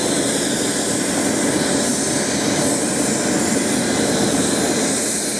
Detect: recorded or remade remade